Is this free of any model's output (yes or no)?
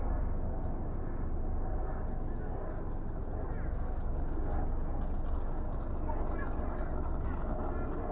yes